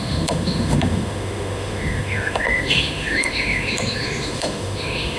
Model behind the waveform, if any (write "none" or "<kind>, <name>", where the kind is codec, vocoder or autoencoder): autoencoder, DAC-VAE